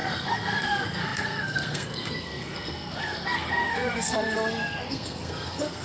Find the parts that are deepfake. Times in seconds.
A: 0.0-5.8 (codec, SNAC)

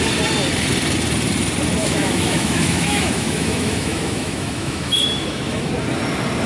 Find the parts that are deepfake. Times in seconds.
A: 1.8-5.7 (autoencoder, DAC-VAE)

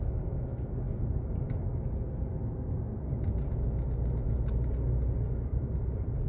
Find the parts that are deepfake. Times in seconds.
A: 5.5-6.3 (vocoder, BigVGAN v2)